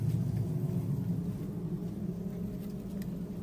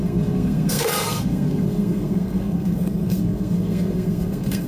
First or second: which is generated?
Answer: second